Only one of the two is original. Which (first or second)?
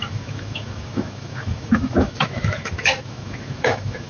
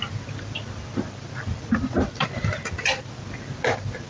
second